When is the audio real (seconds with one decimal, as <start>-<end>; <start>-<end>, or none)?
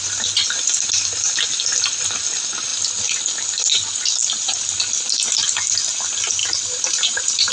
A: 0.0-6.4